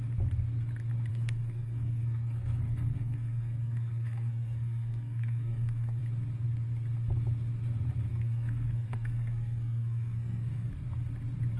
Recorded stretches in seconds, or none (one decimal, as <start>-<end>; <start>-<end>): 0.0-1.1; 6.0-8.1; 10.7-11.6